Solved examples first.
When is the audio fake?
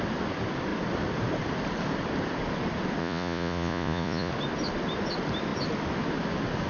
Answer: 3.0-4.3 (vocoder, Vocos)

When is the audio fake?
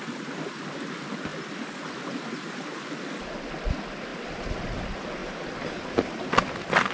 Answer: 4.1-4.6 (vocoder, BigVGAN v2)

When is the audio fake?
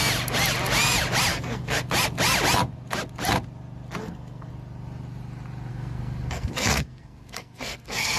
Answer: 1.3-1.9 (codec, SNAC); 4.0-4.5; 5.7-8.2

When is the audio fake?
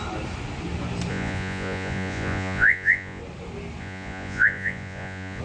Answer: 1.1-3.2 (vocoder, Vocos); 3.8-5.4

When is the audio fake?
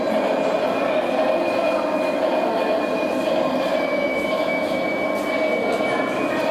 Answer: 4.1-4.8 (autoencoder, DAC-VAE)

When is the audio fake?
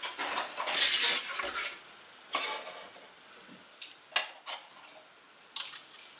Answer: none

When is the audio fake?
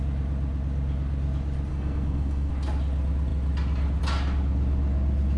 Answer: 1.7-2.5 (codec, SNAC)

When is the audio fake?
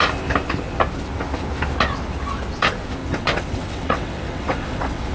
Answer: 3.0-5.1 (vocoder, WaveNeXt)